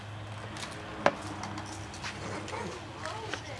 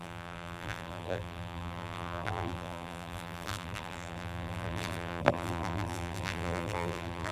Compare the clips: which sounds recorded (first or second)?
first